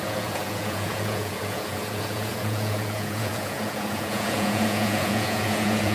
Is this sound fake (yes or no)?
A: yes